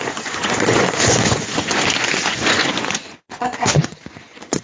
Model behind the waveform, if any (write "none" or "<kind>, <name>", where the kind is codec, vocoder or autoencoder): vocoder, Vocos